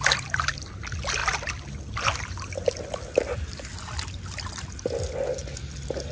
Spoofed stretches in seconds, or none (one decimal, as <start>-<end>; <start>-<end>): none